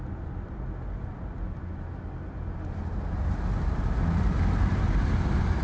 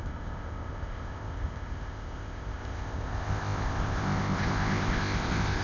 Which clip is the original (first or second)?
first